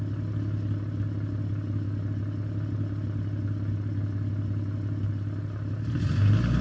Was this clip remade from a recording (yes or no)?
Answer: no